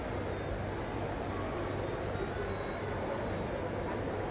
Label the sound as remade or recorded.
recorded